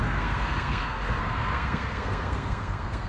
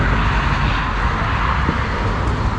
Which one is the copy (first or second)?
first